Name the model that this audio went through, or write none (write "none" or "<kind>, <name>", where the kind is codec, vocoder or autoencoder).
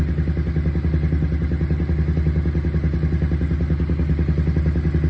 none